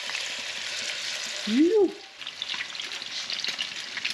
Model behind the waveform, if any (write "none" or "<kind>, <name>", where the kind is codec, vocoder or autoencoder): none